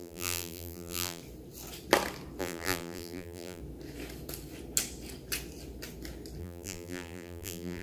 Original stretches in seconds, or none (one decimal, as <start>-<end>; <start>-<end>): 1.2-2.4; 3.6-6.4

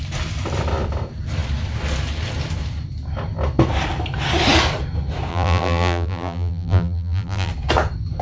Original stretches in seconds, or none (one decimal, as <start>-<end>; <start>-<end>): 0.0-5.3; 7.5-8.2

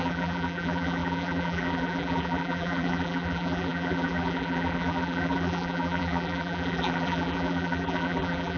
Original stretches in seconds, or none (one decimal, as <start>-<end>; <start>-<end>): none